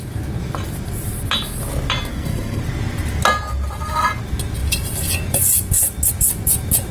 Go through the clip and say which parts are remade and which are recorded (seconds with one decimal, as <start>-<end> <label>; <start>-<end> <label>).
0.0-2.1 recorded; 2.1-2.6 remade; 2.6-6.9 recorded